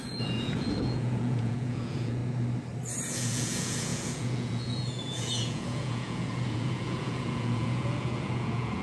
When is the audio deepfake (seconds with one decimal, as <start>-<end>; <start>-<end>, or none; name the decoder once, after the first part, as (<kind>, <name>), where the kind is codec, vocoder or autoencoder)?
0.0-2.2 (vocoder, Vocos); 3.1-8.8